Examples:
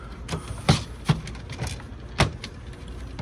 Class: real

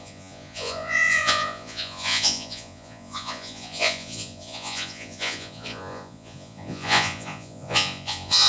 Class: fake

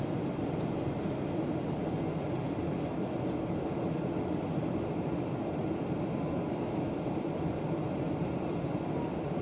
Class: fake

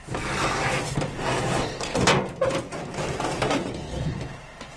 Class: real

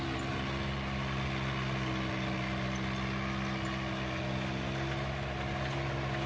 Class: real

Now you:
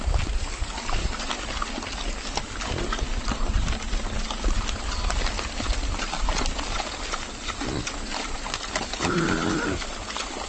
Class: real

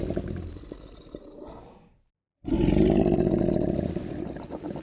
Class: real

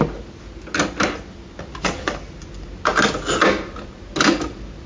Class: real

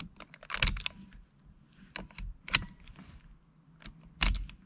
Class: real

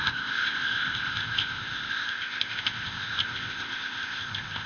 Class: fake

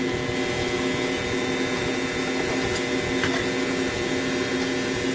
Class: real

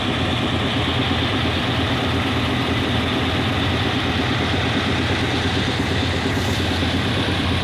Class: real